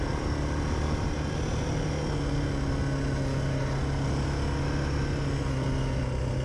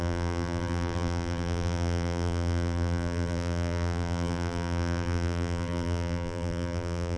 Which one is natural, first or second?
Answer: first